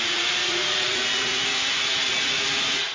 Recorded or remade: remade